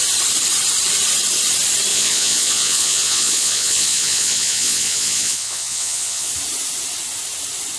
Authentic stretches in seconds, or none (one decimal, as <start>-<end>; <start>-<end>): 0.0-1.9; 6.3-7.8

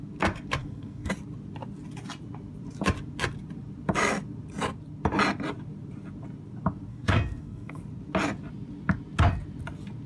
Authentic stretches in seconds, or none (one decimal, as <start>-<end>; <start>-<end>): 0.0-0.6; 1.1-6.9; 7.8-10.1

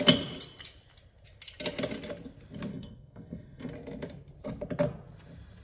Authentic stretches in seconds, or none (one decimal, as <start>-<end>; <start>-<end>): 0.0-2.7; 3.7-5.6

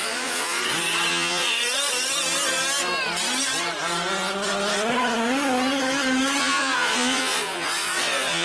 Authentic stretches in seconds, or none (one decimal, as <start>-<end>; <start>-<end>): 0.6-1.1; 1.6-6.4